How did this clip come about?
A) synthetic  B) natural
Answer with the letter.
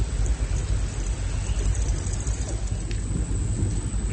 B